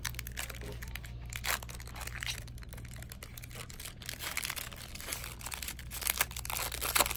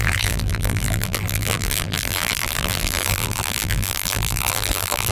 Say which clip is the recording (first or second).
first